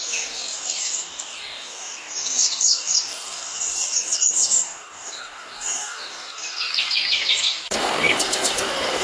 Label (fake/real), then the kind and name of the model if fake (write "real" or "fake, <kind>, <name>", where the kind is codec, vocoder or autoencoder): fake, codec, DAC